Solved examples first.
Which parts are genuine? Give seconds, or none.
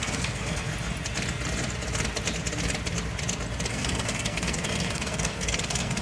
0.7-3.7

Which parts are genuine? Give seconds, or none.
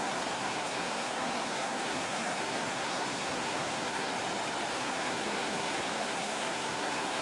4.1-4.7